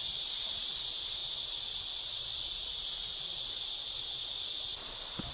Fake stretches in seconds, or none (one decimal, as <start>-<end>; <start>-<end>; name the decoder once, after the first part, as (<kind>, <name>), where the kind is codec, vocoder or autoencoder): none